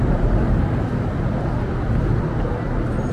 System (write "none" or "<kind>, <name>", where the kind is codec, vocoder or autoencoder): none